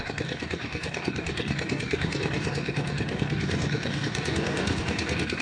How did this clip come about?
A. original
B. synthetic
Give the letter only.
B